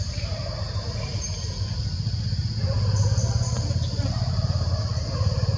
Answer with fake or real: real